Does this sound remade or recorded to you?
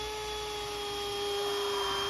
recorded